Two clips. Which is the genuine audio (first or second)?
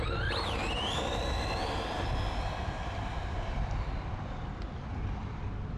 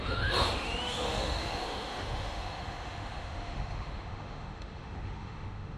first